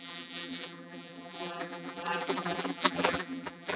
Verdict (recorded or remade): remade